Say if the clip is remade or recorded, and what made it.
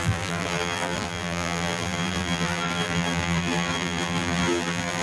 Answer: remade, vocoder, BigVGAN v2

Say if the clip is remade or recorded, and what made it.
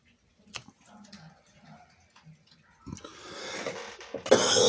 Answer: recorded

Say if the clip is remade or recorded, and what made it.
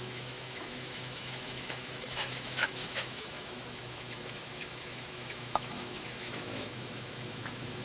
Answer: remade, autoencoder, DAC-VAE